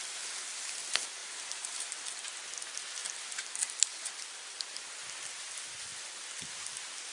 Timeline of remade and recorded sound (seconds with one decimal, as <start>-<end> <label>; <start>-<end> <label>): 0.0-1.2 recorded; 1.2-1.9 remade; 1.9-3.0 recorded; 3.0-4.1 remade; 4.1-7.1 recorded